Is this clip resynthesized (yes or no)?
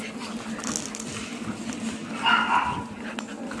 no